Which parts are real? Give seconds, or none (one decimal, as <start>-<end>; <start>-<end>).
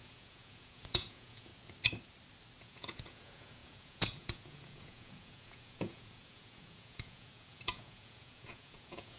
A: 1.5-2.6